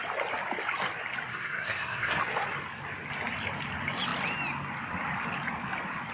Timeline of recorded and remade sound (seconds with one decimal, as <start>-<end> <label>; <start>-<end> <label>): 0.0-1.3 recorded; 1.3-2.2 remade; 2.2-6.1 recorded